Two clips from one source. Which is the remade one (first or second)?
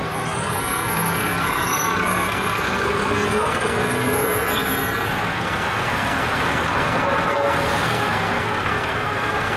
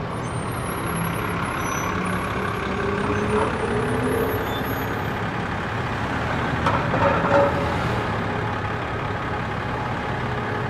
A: first